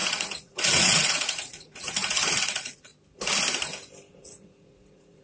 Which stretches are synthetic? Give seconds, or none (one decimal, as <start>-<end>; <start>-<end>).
0.0-2.9; 4.1-5.2